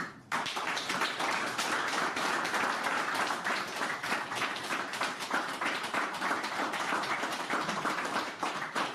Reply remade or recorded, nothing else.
remade